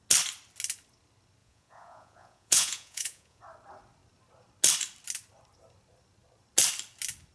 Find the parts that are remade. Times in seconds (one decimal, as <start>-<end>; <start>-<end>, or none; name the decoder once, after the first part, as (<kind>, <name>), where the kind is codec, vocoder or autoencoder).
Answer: 1.4-3.4 (vocoder, Vocos)